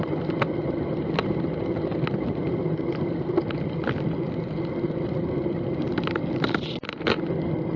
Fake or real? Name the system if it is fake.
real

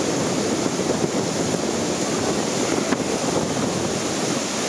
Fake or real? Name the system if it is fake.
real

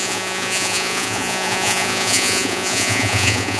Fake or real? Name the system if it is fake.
fake, vocoder, Vocos